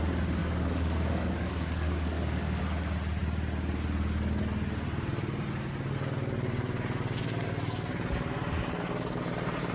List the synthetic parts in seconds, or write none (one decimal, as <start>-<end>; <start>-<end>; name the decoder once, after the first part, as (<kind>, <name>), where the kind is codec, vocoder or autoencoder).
0.4-2.6 (codec, DAC)